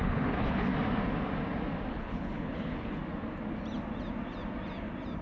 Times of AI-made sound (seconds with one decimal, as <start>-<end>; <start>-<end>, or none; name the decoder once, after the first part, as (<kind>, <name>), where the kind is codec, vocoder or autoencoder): 0.0-0.7 (codec, HILCodec); 1.9-3.0